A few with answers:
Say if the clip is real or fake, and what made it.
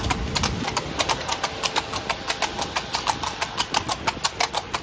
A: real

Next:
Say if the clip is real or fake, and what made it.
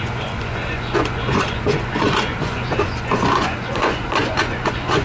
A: fake, vocoder, Vocos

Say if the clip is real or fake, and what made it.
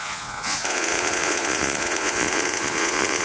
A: fake, vocoder, Vocos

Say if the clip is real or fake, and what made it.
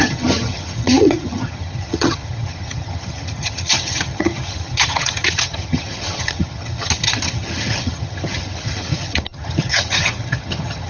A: fake, vocoder, HiFi-GAN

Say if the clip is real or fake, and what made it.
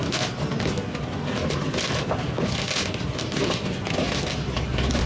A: real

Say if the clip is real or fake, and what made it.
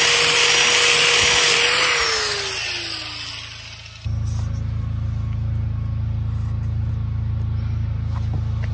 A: real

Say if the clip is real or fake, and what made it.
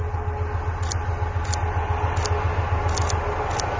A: real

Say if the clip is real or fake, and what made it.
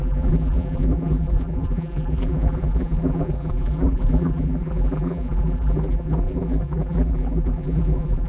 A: fake, vocoder, BigVGAN v2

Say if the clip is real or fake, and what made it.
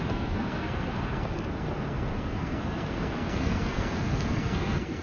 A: fake, codec, SNAC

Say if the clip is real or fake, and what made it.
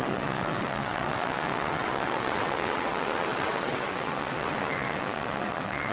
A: fake, vocoder, WaveNeXt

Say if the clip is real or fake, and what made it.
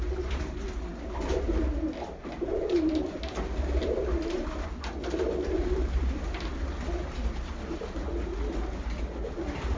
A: real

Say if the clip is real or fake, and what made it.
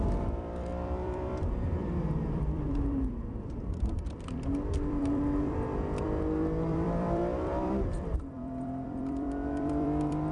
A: fake, vocoder, BigVGAN v2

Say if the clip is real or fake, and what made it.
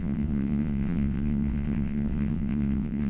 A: fake, vocoder, WaveNeXt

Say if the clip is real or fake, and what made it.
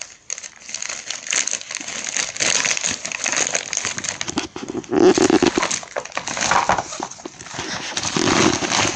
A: real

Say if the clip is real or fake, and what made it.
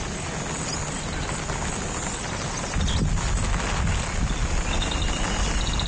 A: real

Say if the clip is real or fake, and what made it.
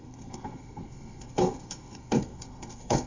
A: fake, codec, SNAC